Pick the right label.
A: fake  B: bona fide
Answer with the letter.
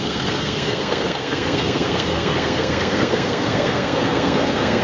A